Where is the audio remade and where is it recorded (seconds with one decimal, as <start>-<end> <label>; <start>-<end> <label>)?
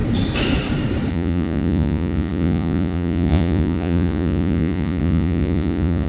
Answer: 0.0-1.1 recorded; 1.1-6.1 remade